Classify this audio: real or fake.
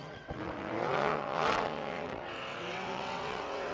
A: fake